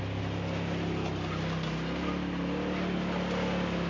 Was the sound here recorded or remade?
recorded